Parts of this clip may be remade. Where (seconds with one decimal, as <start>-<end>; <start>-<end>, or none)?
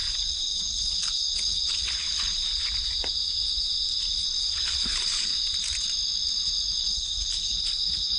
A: 0.0-2.5; 4.4-5.3; 6.8-8.2